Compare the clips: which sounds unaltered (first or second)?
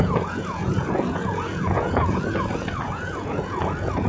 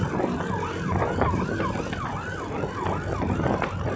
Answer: second